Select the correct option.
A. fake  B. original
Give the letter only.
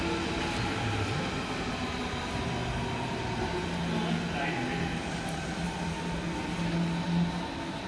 B